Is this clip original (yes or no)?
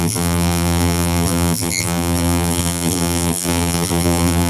no